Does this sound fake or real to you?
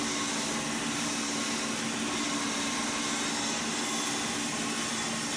real